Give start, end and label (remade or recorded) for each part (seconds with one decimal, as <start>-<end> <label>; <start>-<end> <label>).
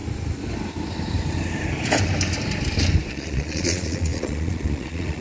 0.0-3.1 recorded; 3.1-5.2 remade